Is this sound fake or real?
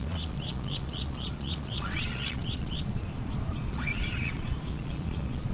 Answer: fake